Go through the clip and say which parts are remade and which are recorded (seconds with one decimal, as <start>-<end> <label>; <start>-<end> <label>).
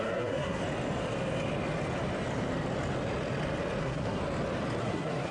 0.0-0.6 remade; 0.6-3.8 recorded; 3.8-4.2 remade; 4.2-4.8 recorded; 4.8-5.3 remade